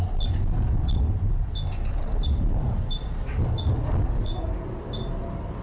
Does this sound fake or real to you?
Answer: real